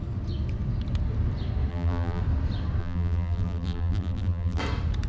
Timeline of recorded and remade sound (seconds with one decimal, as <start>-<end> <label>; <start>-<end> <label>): 0.0-1.7 recorded; 1.7-2.2 remade; 2.2-2.8 recorded; 2.8-4.6 remade; 4.6-5.1 recorded